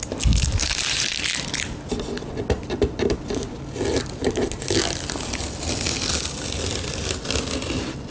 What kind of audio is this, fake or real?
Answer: real